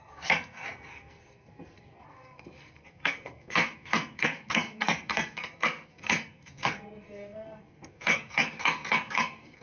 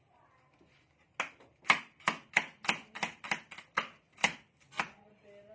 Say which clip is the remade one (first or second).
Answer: first